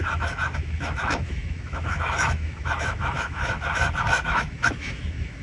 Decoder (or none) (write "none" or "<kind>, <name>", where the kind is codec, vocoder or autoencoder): autoencoder, DAC-VAE